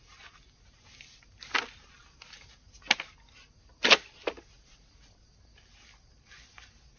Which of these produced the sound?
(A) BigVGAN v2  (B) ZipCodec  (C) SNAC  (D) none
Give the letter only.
D